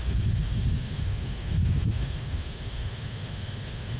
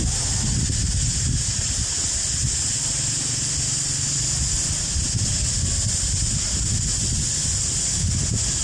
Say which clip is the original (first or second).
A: second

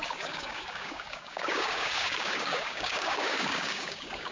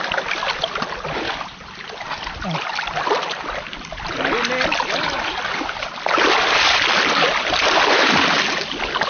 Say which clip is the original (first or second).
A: second